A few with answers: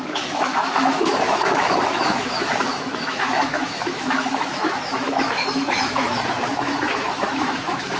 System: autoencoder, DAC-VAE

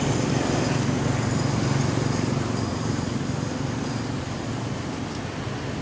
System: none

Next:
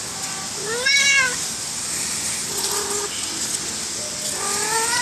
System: none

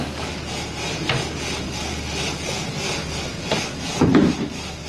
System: none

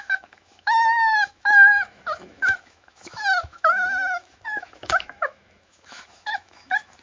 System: autoencoder, DAC-VAE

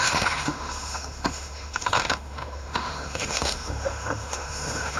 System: autoencoder, DAC-VAE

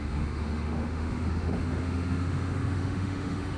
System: autoencoder, DAC-VAE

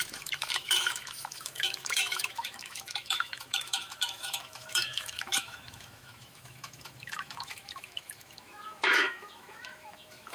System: autoencoder, DAC-VAE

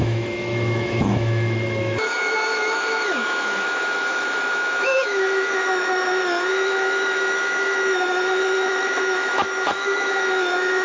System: autoencoder, DAC-VAE